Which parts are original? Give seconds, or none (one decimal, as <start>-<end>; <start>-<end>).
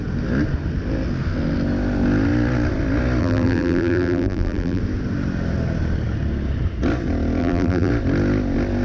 0.0-3.2; 4.8-7.4; 7.9-8.8